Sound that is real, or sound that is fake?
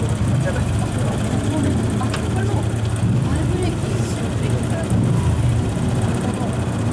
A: real